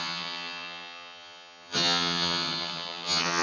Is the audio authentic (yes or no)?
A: no